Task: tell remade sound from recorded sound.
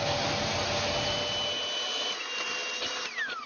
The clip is recorded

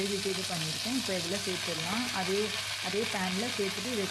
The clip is recorded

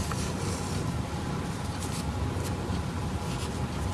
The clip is recorded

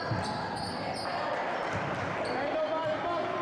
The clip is recorded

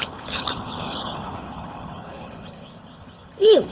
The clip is remade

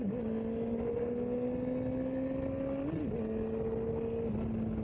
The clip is recorded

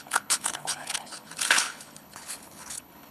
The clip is remade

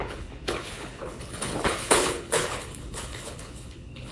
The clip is remade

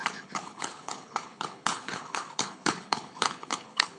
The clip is remade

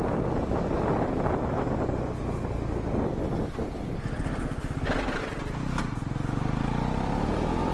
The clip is recorded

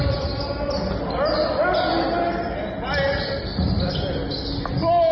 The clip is recorded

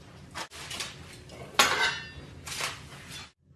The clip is recorded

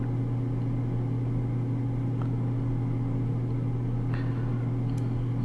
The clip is recorded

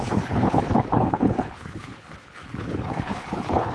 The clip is remade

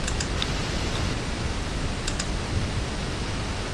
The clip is recorded